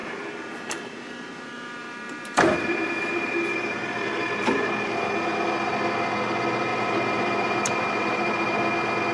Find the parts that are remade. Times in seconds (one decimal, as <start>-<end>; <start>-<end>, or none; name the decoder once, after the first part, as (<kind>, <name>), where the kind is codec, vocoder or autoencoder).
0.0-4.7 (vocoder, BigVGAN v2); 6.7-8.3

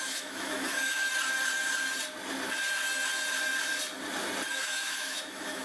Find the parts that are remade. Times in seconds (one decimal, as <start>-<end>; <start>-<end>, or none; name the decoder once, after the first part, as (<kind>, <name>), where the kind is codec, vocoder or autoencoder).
0.0-1.1 (autoencoder, DAC-VAE); 4.5-5.6

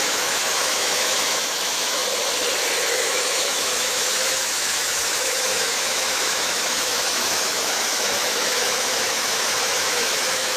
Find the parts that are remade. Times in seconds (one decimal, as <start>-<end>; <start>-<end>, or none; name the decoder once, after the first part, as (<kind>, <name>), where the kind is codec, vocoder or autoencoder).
0.0-2.0 (autoencoder, DAC-VAE); 2.9-10.6

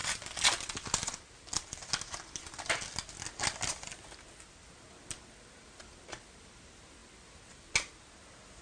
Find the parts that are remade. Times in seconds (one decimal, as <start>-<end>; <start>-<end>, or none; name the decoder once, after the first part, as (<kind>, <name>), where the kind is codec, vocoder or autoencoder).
none